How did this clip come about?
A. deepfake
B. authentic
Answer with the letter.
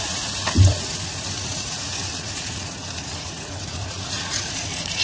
A